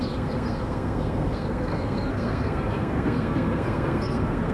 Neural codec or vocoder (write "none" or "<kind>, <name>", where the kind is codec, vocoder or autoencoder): codec, SNAC